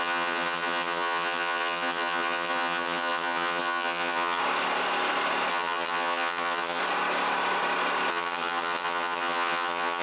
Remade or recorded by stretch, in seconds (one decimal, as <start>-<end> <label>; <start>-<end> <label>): 0.0-4.4 remade; 4.4-5.5 recorded; 5.5-6.8 remade; 6.8-8.1 recorded; 8.1-10.0 remade